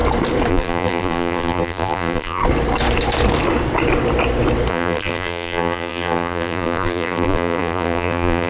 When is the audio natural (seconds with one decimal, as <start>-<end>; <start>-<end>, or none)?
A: 0.0-0.5; 2.4-4.7